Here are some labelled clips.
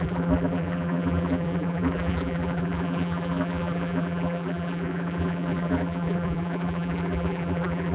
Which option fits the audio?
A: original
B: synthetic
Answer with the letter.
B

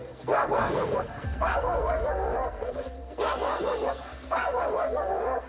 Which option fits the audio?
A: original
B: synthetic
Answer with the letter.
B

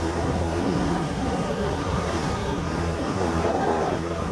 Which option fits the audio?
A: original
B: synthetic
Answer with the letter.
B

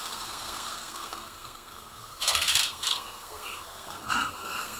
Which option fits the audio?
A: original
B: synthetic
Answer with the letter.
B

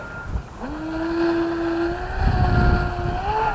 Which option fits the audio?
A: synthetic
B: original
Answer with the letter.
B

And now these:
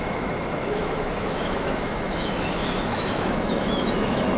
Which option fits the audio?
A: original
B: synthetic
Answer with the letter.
B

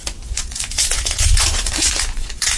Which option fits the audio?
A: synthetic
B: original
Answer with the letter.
A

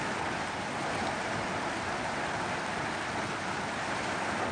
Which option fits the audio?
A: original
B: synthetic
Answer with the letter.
A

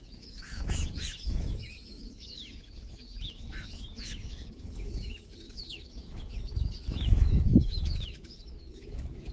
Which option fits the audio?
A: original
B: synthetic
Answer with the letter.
B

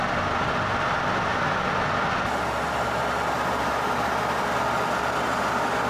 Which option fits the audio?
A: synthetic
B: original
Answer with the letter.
B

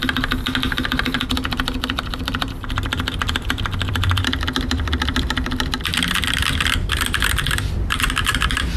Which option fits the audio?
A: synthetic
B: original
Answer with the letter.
A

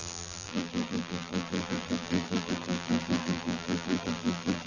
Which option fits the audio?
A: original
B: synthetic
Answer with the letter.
B